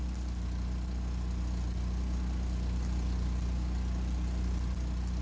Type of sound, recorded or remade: recorded